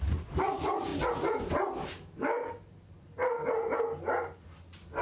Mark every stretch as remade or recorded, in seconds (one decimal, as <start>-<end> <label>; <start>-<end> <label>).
0.0-5.0 recorded